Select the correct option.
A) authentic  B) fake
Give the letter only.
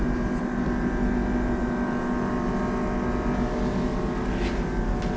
A